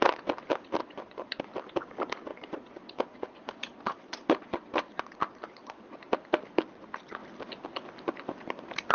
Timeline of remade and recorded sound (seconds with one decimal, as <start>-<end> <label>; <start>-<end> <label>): 0.0-0.8 recorded; 0.8-1.4 remade; 1.4-2.3 recorded; 2.3-6.0 remade; 6.0-8.9 recorded